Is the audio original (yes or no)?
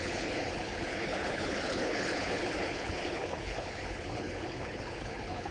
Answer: no